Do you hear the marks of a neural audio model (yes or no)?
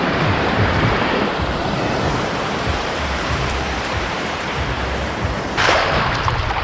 yes